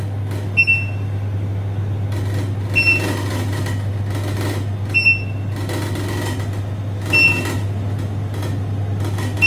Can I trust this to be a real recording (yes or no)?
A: yes